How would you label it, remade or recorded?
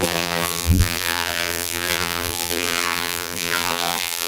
remade